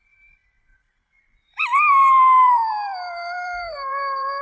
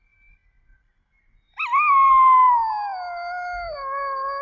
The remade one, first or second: first